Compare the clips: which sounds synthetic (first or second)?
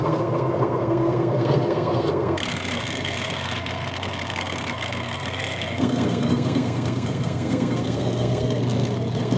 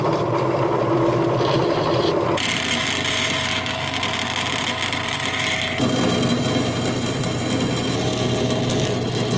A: first